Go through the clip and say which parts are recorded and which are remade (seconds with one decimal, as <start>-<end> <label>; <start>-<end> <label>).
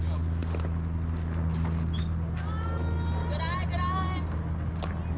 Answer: 0.0-5.2 recorded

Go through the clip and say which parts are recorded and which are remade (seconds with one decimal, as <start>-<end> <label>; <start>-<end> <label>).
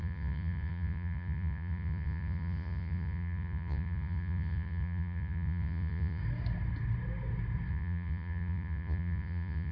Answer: 0.0-6.2 remade; 6.2-7.7 recorded; 7.7-9.7 remade